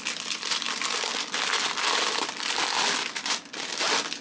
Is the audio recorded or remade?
recorded